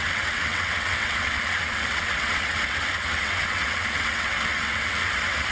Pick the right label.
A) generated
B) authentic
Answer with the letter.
A